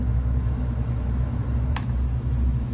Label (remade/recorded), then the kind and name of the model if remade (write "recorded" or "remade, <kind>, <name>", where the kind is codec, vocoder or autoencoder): remade, autoencoder, DAC-VAE